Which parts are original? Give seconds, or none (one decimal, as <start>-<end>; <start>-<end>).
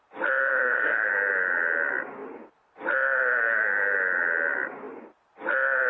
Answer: 0.0-0.4; 1.1-5.9